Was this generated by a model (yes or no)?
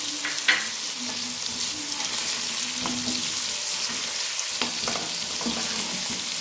no